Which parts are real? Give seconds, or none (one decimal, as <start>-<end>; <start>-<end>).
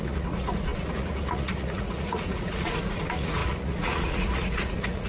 none